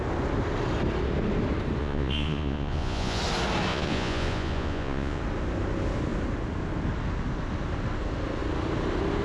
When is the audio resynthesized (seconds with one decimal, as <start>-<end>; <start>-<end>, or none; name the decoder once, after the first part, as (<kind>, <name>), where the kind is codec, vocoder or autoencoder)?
1.8-3.2 (vocoder, Vocos); 3.7-5.2